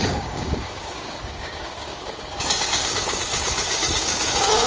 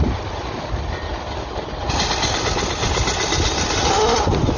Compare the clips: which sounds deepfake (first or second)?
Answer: first